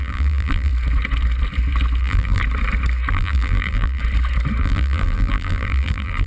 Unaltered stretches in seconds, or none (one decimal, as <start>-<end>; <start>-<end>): 0.7-2.0; 2.4-3.1; 4.0-4.6